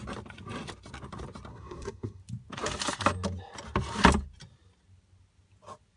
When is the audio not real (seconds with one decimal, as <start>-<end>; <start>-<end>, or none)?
1.5-2.2